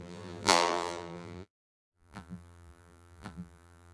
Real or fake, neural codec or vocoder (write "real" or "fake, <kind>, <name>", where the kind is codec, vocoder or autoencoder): fake, vocoder, BigVGAN v2